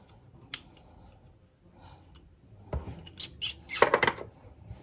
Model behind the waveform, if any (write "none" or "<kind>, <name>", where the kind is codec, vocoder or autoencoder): none